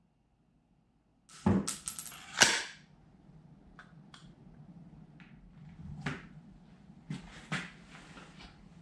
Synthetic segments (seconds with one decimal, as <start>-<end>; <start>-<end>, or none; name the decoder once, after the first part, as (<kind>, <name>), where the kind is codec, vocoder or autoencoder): none